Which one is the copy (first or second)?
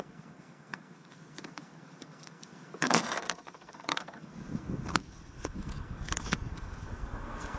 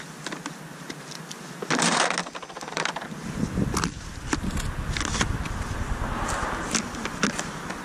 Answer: first